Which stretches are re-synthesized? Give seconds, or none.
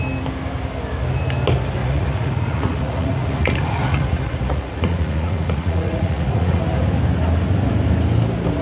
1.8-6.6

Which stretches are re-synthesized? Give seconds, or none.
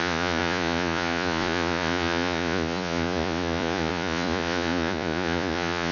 0.0-5.9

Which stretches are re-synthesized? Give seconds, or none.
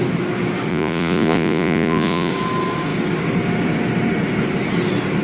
0.7-2.3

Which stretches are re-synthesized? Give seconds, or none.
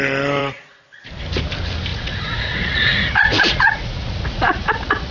0.4-1.0; 1.9-5.1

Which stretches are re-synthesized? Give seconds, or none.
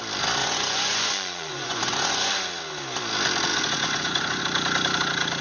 0.4-2.3; 3.5-4.4